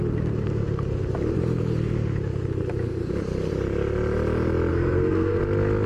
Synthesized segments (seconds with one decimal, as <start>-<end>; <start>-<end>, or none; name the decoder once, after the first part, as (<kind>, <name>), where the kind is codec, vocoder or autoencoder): 4.7-5.4 (codec, SNAC)